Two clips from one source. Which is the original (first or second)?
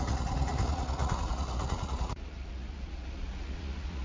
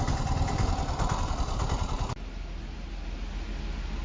second